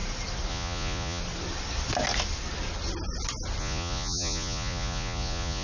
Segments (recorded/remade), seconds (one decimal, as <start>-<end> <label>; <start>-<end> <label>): 0.0-0.5 recorded; 0.5-1.2 remade; 1.2-3.6 recorded; 3.6-5.6 remade